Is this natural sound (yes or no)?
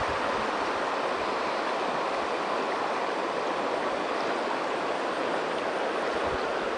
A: yes